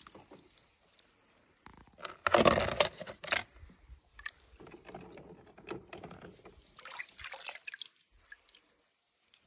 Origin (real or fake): real